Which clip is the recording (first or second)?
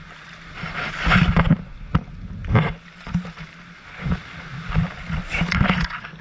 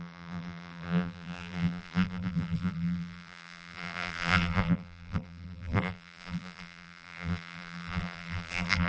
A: first